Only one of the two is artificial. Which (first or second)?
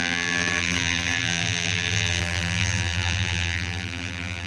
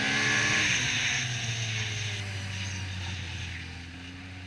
first